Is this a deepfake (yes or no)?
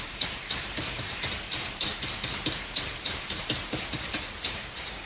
yes